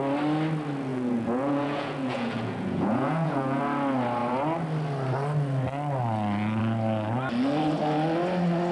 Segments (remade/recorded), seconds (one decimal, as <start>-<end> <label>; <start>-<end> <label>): 0.0-0.9 recorded; 0.9-3.6 remade; 3.6-8.7 recorded